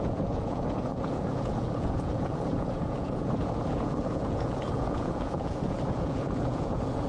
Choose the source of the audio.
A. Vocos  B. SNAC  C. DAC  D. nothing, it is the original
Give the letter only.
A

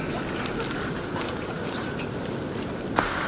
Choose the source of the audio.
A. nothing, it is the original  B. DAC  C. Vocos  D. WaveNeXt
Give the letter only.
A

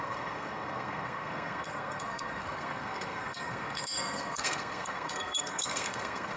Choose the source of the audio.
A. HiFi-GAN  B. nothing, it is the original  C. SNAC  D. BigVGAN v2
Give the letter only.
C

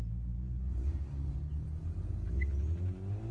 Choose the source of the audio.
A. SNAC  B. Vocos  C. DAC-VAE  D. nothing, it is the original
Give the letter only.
D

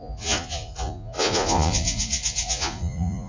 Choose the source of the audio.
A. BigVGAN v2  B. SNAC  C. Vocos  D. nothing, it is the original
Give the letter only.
C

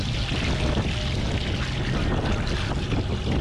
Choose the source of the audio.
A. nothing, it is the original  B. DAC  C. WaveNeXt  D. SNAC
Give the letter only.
A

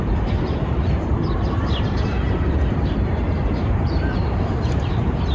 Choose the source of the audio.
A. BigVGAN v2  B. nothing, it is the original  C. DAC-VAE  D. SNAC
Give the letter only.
A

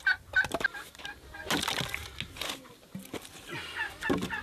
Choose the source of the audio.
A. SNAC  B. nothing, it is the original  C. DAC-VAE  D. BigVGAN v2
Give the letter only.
B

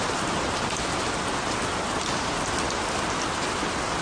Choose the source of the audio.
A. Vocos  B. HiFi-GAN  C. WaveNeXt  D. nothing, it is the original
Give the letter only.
D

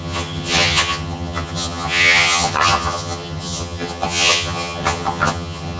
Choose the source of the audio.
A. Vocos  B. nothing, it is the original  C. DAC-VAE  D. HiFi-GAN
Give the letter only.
D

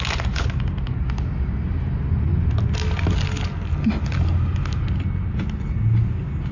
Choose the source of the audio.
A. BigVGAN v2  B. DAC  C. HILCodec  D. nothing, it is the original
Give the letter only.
D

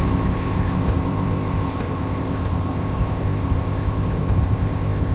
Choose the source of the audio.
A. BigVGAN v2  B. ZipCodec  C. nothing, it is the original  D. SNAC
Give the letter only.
B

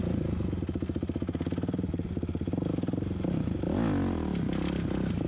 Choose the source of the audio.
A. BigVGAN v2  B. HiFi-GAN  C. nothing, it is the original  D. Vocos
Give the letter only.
C